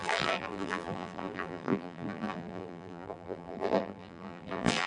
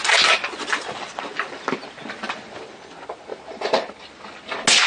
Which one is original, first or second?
second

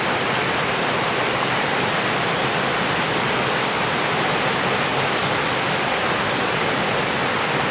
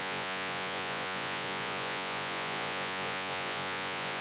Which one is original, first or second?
first